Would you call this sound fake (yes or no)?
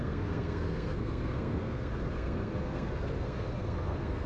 yes